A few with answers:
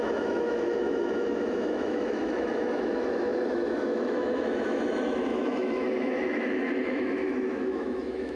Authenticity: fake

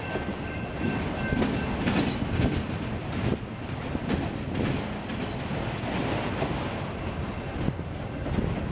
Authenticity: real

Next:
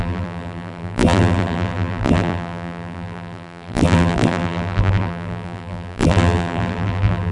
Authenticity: fake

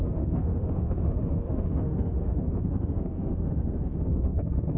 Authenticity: fake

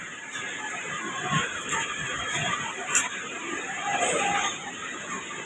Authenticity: fake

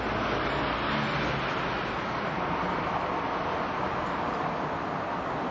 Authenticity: real